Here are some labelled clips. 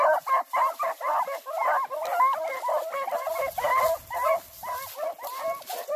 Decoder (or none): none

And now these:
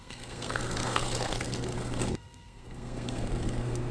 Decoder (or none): codec, SNAC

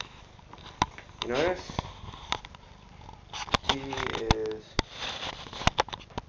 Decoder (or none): none